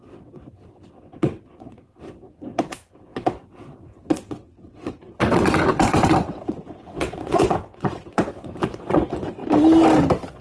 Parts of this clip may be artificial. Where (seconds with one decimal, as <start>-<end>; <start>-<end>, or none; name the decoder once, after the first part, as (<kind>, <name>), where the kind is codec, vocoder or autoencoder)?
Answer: 0.0-9.4 (vocoder, WaveNeXt)

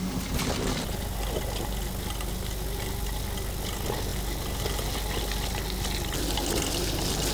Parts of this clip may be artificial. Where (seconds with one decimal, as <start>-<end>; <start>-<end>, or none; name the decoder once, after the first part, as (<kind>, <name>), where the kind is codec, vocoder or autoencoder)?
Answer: none

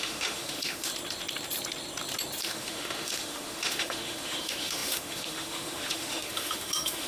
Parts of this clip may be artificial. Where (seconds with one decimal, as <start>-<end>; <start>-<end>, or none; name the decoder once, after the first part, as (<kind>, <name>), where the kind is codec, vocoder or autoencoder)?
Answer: 0.0-0.9 (autoencoder, DAC-VAE); 2.4-7.1

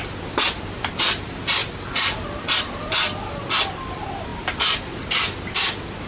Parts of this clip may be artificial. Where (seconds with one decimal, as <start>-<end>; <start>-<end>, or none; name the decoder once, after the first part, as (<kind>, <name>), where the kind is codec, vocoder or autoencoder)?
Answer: none

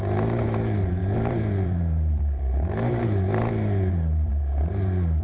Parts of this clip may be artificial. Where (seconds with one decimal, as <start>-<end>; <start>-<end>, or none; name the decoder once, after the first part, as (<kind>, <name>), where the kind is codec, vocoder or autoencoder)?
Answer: 0.0-5.2 (vocoder, BigVGAN v2)